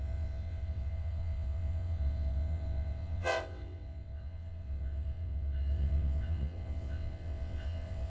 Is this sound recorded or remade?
remade